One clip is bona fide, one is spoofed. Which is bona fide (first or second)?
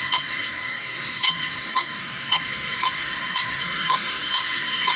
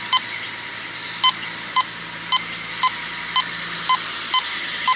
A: second